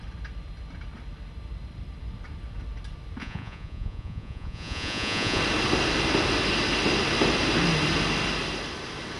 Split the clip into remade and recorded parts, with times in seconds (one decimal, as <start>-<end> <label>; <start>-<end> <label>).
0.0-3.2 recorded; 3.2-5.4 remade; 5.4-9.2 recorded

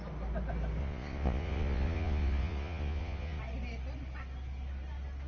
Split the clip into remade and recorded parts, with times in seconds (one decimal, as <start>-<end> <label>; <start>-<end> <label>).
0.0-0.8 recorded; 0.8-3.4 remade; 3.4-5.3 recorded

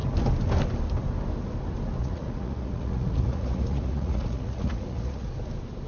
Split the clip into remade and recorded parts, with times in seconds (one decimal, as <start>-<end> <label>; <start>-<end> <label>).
0.0-2.0 recorded; 2.0-5.4 remade; 5.4-5.9 recorded

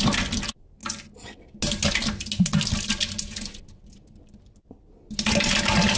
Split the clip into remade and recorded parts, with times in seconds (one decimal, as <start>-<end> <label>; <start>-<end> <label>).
0.0-6.0 recorded

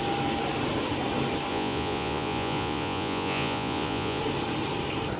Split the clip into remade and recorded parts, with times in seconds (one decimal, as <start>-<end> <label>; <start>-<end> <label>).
0.0-1.5 recorded; 1.5-4.2 remade; 4.2-5.2 recorded